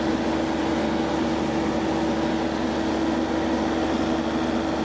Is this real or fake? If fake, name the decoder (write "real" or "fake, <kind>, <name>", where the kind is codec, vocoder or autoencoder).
real